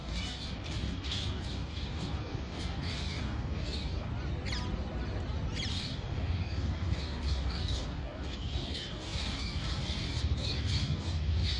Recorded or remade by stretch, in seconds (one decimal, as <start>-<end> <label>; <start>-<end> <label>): 0.0-4.1 remade; 4.1-5.7 recorded; 5.7-11.6 remade